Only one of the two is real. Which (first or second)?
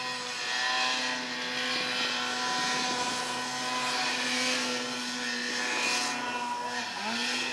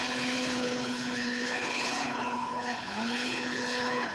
first